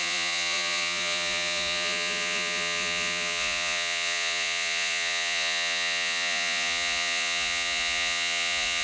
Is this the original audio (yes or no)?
no